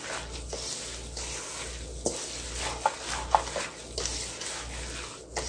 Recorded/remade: recorded